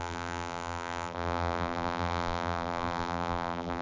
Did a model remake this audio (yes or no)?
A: yes